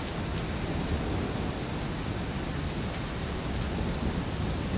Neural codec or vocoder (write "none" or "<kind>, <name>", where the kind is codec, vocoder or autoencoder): none